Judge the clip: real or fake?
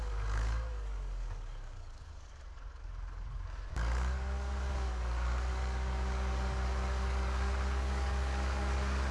fake